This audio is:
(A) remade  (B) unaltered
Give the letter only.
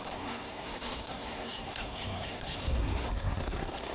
A